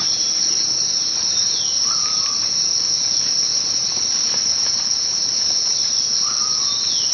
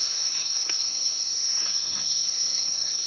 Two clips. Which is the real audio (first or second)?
first